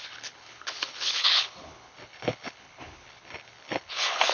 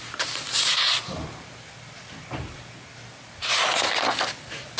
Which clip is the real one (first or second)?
second